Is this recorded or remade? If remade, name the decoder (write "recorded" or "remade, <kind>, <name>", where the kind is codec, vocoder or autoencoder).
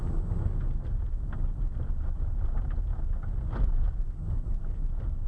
recorded